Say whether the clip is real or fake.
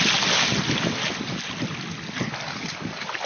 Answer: real